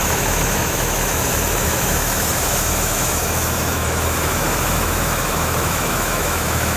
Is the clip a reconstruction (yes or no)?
yes